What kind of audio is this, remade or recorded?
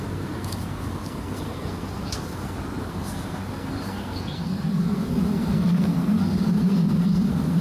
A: remade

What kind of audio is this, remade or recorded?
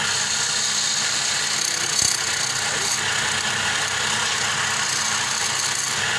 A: recorded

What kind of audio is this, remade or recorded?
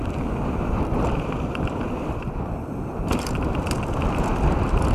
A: remade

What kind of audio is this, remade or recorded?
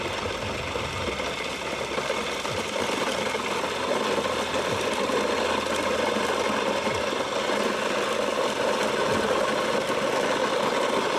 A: recorded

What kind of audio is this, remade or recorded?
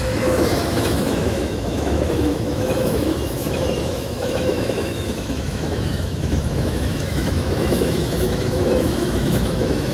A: remade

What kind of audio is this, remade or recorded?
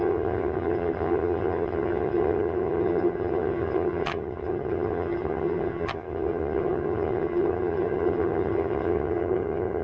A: remade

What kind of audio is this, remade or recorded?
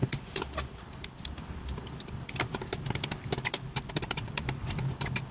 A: remade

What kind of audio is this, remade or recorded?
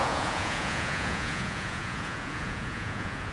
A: remade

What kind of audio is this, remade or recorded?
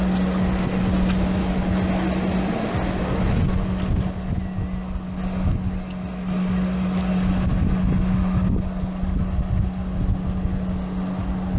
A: recorded